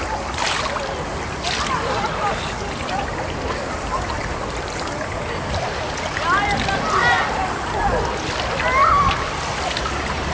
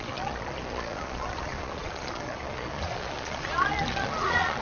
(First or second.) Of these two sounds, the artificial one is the second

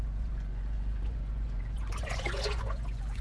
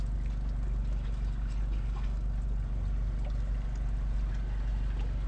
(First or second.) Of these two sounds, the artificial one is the first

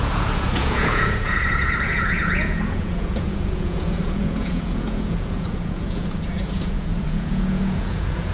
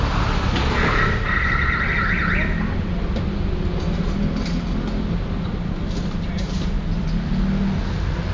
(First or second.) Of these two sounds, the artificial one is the first